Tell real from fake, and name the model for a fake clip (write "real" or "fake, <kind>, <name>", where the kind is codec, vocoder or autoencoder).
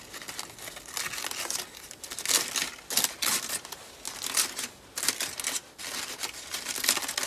real